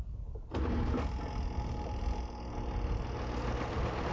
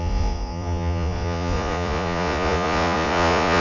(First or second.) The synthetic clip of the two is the second